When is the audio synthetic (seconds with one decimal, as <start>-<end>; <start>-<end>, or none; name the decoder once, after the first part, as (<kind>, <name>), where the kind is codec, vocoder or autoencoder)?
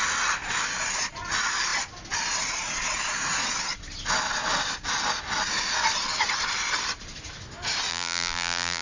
7.9-8.8 (vocoder, BigVGAN v2)